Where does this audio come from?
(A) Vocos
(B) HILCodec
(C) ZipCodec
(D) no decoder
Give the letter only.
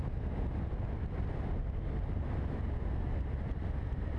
D